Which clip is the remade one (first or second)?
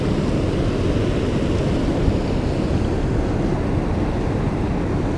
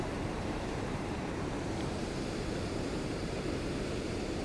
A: second